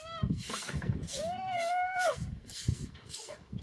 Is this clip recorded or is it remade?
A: remade